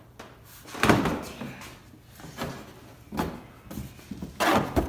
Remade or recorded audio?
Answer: recorded